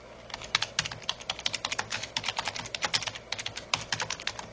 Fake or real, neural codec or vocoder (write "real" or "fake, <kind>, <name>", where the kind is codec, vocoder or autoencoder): real